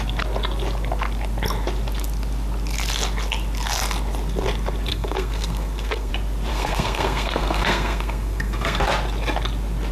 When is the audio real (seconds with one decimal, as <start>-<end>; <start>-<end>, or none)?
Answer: 0.0-4.9; 6.1-6.5; 8.8-9.9